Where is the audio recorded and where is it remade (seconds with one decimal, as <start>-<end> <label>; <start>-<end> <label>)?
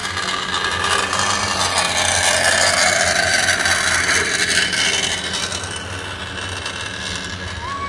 0.0-7.9 recorded